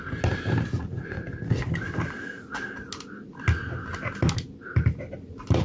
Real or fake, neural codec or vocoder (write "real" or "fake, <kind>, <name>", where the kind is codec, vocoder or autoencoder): real